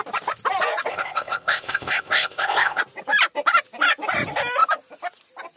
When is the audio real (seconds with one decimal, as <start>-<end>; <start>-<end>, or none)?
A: 0.0-0.9; 2.8-5.6

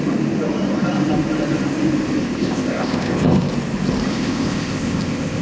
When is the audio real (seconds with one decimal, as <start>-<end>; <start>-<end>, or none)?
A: 0.0-2.2; 3.5-4.1

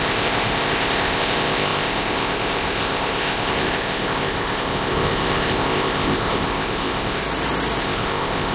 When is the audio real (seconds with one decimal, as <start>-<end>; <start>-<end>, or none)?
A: 7.2-7.8

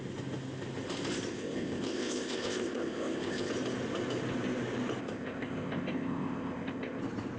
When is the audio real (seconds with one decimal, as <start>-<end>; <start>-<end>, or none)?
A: 0.0-1.3; 3.5-5.0; 7.0-7.4

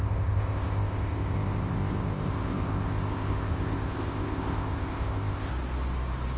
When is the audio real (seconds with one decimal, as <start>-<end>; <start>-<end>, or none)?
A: 5.5-6.4

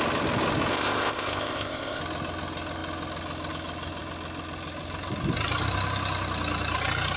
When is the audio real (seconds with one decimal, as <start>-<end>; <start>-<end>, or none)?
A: 0.0-0.7; 2.0-7.2

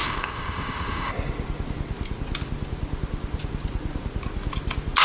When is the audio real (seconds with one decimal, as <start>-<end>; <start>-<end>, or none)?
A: 1.1-5.0

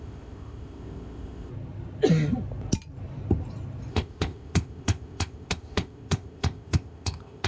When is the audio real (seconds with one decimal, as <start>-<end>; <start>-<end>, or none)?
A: 1.5-3.9